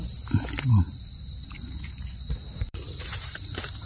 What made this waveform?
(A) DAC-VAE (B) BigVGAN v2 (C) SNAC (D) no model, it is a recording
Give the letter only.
B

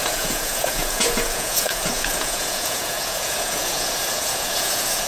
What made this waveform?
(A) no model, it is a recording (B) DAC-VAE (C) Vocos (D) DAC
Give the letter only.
C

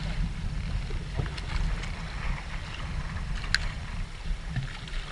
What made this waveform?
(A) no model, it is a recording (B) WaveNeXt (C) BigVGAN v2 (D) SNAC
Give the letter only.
A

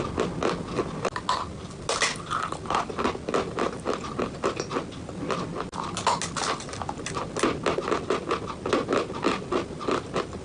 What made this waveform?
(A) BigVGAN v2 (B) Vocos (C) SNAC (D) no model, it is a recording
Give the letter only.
D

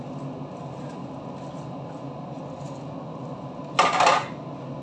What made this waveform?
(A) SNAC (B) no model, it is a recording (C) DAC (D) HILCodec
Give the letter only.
B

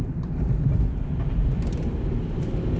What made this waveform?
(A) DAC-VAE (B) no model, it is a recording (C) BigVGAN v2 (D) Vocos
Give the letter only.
C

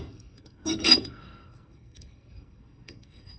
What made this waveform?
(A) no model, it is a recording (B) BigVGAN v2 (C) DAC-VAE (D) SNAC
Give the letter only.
D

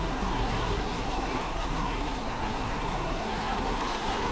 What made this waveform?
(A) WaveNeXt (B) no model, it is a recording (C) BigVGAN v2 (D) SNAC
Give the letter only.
D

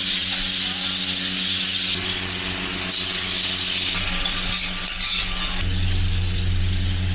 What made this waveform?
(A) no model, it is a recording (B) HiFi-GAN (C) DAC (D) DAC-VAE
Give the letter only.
A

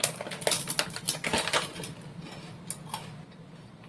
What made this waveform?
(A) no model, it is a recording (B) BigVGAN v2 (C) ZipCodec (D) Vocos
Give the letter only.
A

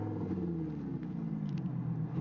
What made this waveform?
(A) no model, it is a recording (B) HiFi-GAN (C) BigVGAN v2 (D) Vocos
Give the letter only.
A